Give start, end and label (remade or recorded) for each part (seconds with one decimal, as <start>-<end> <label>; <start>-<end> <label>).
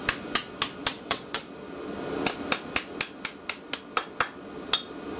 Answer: 0.0-0.9 recorded; 0.9-1.4 remade; 1.4-5.2 recorded